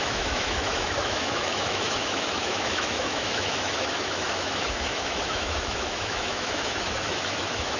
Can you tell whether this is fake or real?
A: fake